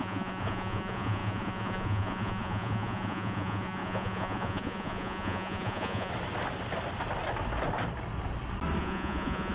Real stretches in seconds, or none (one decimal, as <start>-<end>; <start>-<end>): 6.1-8.8